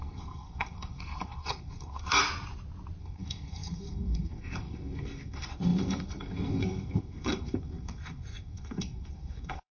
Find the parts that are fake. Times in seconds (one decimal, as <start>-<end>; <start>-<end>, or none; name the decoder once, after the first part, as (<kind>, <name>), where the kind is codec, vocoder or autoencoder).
0.0-2.2 (codec, SNAC); 3.0-9.8